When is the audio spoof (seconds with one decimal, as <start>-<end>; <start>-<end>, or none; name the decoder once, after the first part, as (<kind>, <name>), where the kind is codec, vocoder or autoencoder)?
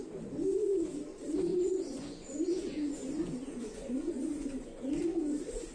1.5-4.9 (vocoder, Vocos)